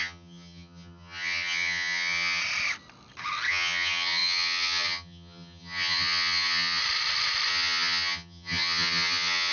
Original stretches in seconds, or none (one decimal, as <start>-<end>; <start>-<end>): 2.4-3.5; 6.8-7.5